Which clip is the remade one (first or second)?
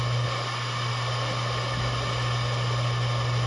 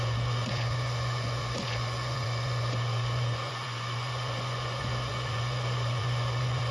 second